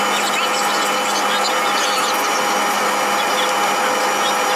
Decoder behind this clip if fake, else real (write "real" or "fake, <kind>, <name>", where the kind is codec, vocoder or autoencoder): real